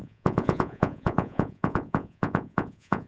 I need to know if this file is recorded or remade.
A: remade